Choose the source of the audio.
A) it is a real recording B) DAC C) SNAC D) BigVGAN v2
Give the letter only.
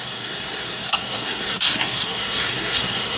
C